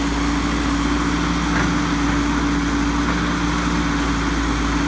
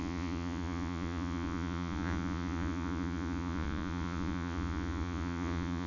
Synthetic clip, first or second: second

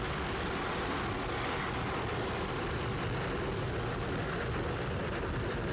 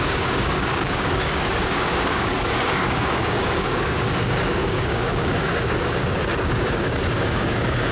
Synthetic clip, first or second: second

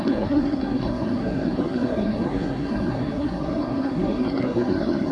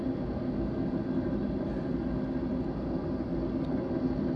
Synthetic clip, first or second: first